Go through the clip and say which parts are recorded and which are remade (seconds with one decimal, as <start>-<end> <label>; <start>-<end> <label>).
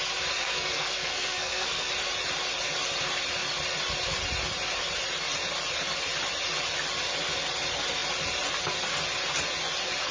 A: 0.0-0.4 recorded; 0.4-1.9 remade; 1.9-10.1 recorded